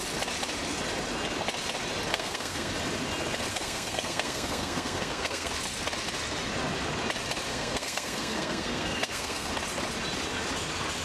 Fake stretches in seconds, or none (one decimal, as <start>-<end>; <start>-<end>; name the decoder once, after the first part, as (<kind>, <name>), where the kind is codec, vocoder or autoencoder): 2.1-2.7 (codec, SNAC); 3.5-5.5; 7.5-9.5

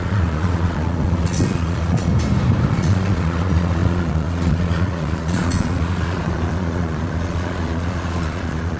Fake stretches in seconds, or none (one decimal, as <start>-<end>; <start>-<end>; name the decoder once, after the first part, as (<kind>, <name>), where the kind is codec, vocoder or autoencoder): 0.0-2.1 (vocoder, Vocos); 2.7-8.8

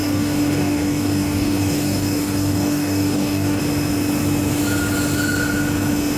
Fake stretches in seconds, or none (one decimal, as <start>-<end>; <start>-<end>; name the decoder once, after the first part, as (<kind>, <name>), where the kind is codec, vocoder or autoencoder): 0.0-3.6 (codec, DAC)